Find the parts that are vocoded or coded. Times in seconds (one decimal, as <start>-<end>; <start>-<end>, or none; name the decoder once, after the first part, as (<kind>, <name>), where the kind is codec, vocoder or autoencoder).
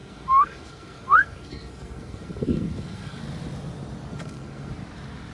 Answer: 0.0-3.2 (codec, SNAC); 4.1-4.7